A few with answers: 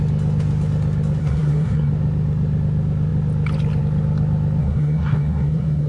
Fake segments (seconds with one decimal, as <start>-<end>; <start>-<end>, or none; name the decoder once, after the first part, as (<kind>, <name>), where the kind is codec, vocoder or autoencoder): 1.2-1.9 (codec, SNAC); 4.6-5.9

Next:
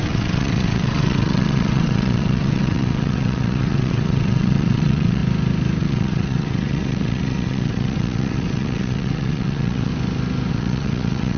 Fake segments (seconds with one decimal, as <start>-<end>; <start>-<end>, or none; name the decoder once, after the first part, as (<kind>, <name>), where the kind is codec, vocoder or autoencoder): 0.0-5.2 (vocoder, WaveNeXt); 5.8-9.9; 10.5-11.4

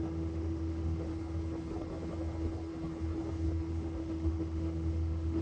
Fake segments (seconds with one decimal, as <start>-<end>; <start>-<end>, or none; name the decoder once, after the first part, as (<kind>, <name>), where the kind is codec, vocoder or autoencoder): 0.0-1.1 (autoencoder, DAC-VAE); 3.7-5.4

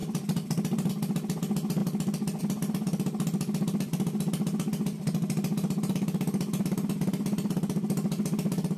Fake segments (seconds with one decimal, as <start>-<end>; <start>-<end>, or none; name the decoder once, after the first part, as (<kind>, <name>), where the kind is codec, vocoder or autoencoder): 0.0-0.9 (vocoder, BigVGAN v2)

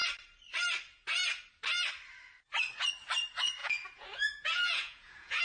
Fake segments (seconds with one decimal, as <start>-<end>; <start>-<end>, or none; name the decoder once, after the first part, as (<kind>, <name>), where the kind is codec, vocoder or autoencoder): 3.6-5.4 (vocoder, Vocos)

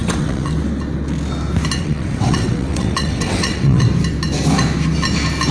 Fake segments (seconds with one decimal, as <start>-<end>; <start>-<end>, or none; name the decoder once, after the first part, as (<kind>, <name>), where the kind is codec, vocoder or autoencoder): 0.0-0.5 (vocoder, WaveNeXt); 1.8-3.8